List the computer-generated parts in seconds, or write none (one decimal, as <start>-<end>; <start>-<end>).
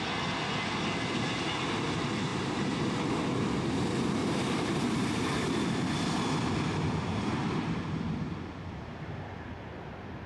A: 2.3-2.9; 4.2-5.5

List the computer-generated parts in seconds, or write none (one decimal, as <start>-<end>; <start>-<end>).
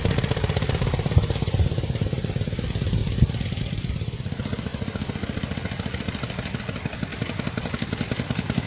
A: 0.0-3.0; 3.6-4.7; 6.6-7.1; 7.7-8.7